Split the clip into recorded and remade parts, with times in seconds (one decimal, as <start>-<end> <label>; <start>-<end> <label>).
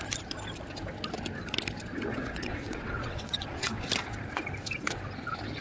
0.0-2.1 recorded; 2.1-3.9 remade; 3.9-5.6 recorded